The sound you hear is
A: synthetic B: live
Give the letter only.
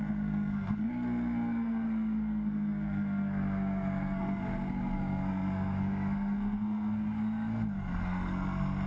A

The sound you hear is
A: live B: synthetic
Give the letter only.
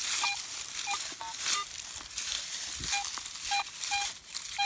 A